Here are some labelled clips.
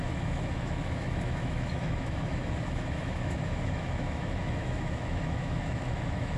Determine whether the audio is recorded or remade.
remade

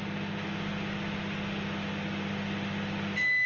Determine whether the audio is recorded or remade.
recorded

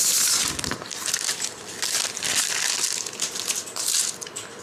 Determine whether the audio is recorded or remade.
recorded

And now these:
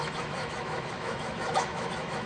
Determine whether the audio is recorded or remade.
remade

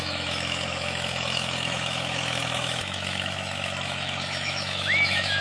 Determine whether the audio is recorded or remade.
remade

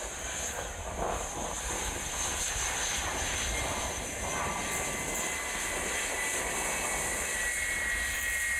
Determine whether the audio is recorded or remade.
recorded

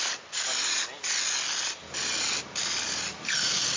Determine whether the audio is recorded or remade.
recorded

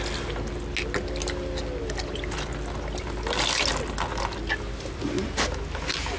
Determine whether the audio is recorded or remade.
recorded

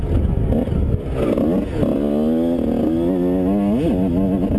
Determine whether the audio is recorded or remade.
recorded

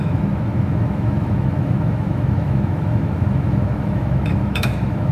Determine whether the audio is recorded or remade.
remade